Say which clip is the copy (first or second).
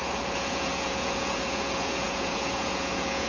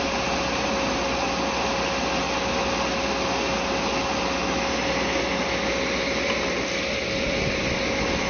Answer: first